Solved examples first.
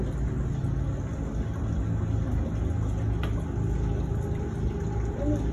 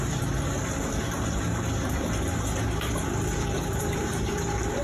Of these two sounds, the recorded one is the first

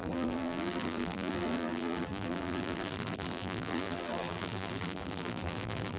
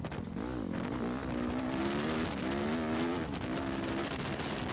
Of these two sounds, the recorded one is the second